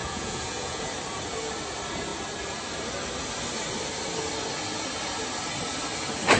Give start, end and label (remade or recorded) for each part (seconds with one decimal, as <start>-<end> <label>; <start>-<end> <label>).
0.0-0.8 remade; 0.8-6.4 recorded